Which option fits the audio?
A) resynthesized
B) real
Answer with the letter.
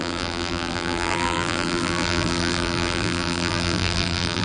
A